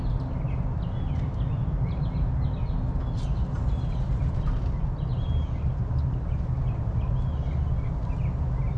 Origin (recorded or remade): recorded